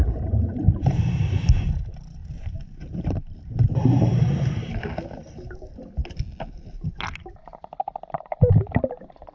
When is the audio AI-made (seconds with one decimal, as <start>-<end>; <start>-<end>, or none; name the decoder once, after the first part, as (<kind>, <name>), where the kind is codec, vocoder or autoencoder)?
2.2-4.1 (vocoder, BigVGAN v2)